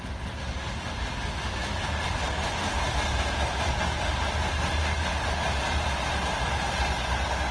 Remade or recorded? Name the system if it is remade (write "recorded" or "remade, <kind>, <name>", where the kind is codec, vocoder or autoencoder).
recorded